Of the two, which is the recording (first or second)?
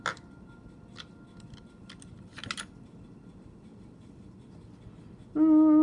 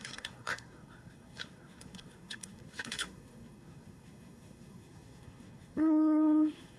first